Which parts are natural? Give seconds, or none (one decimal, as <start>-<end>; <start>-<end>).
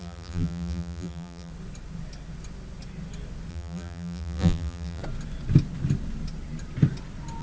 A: 1.5-3.5; 5.0-7.4